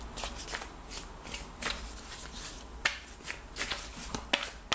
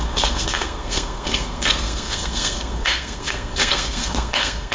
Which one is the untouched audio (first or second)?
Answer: first